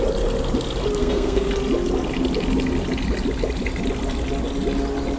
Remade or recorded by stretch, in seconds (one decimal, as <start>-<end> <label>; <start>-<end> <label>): 0.0-1.0 recorded; 1.0-1.5 remade; 1.5-5.2 recorded